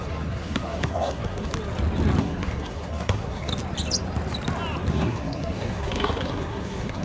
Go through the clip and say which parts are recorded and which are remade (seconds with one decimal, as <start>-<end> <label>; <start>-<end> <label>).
0.0-1.5 remade; 1.5-2.2 recorded; 2.2-3.5 remade; 3.5-4.9 recorded; 4.9-7.0 remade